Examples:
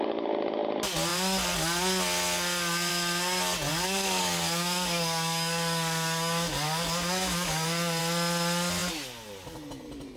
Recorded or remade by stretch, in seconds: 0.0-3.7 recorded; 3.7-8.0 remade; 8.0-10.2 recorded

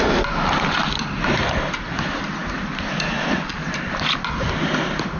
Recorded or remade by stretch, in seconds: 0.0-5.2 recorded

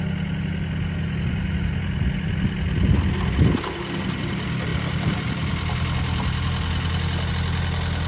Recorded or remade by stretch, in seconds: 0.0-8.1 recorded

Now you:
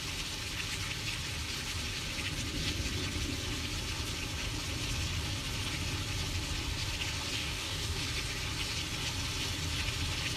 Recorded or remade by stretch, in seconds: 0.0-7.4 recorded; 7.4-8.0 remade; 8.0-10.4 recorded